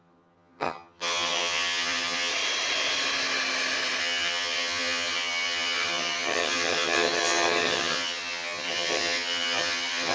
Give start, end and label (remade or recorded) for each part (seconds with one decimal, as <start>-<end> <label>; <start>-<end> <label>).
0.0-2.3 remade; 2.3-4.0 recorded; 4.0-10.1 remade